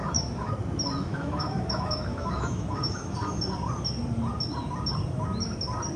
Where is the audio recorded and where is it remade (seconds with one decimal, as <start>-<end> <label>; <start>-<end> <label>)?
0.0-0.5 remade; 0.5-1.1 recorded; 1.1-3.4 remade; 3.4-6.0 recorded